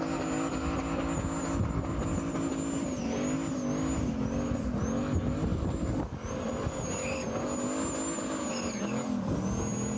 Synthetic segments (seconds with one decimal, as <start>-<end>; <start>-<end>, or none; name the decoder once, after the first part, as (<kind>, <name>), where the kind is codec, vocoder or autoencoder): none